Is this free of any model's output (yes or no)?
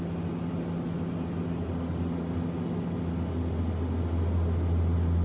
yes